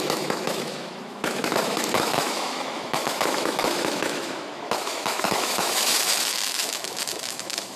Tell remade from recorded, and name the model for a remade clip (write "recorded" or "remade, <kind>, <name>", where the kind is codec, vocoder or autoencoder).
remade, autoencoder, DAC-VAE